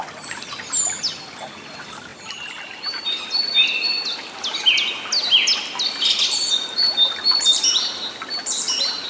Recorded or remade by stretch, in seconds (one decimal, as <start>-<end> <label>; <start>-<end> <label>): 0.0-9.1 recorded

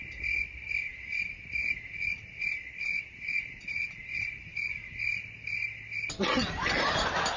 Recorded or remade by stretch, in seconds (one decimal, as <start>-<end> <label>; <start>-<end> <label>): 0.0-7.4 recorded

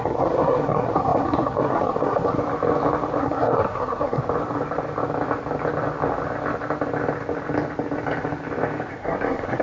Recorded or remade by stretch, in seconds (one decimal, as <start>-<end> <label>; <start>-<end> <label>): 0.0-2.4 remade; 2.4-3.2 recorded; 3.2-4.2 remade; 4.2-8.9 recorded; 8.9-9.6 remade

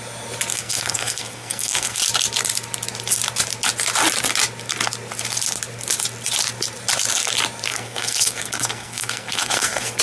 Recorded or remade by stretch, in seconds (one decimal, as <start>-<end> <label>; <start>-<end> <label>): 0.0-0.5 recorded; 0.5-2.0 remade; 2.0-7.7 recorded; 7.7-10.0 remade